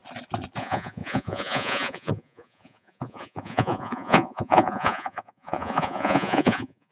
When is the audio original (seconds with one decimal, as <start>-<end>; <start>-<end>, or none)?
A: 0.0-0.6